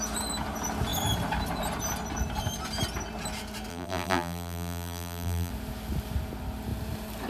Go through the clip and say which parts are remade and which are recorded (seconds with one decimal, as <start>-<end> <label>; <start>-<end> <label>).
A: 0.0-3.7 recorded; 3.7-5.5 remade; 5.5-7.3 recorded